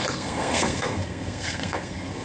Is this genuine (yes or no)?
no